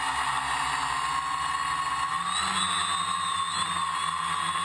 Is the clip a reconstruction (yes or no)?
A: no